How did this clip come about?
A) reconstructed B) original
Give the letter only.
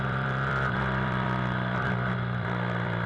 A